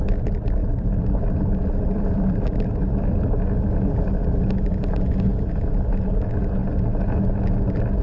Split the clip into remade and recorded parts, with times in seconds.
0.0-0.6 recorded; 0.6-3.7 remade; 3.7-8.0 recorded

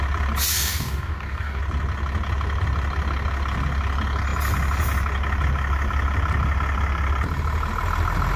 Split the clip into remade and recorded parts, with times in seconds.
0.0-0.5 recorded; 0.5-1.6 remade; 1.6-8.4 recorded

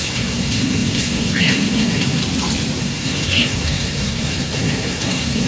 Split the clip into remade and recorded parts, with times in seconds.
0.0-2.2 remade; 2.2-2.8 recorded; 2.8-5.5 remade

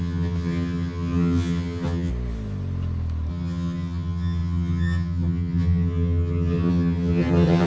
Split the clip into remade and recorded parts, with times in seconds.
0.0-2.1 remade; 2.1-3.3 recorded; 3.3-7.7 remade

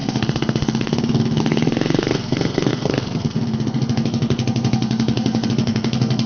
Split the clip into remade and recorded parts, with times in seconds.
0.0-6.3 remade

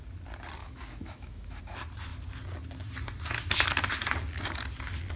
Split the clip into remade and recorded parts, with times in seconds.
0.0-0.6 recorded; 0.6-1.6 remade; 1.6-5.2 recorded